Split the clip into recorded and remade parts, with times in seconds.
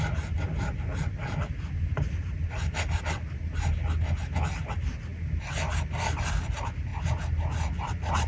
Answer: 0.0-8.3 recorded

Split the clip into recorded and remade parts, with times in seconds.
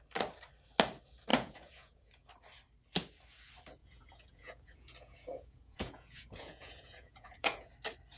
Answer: 0.0-1.3 recorded; 1.3-2.3 remade; 2.3-3.8 recorded; 3.8-7.7 remade; 7.7-8.2 recorded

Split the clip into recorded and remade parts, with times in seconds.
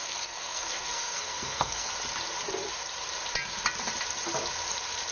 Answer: 0.0-1.9 remade; 1.9-5.1 recorded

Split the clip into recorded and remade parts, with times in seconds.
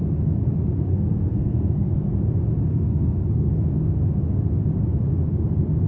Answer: 0.0-0.9 recorded; 0.9-2.1 remade; 2.1-2.7 recorded; 2.7-3.5 remade; 3.5-5.9 recorded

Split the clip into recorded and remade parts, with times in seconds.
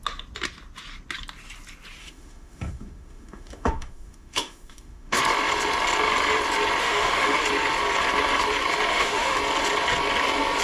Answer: 0.0-2.0 recorded; 2.0-5.2 remade; 5.2-6.8 recorded; 6.8-7.4 remade; 7.4-8.9 recorded; 8.9-9.4 remade; 9.4-10.6 recorded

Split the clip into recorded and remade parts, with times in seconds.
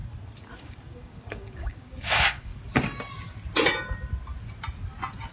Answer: 0.0-0.6 recorded; 0.6-2.5 remade; 2.5-5.3 recorded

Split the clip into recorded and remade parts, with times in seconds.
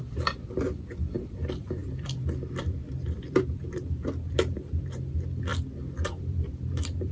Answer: 0.0-5.5 remade; 5.5-6.1 recorded; 6.1-7.1 remade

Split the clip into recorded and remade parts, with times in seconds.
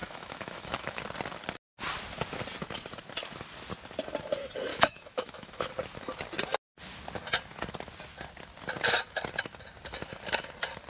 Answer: 0.0-1.0 remade; 1.0-4.7 recorded; 4.7-5.7 remade; 5.7-10.9 recorded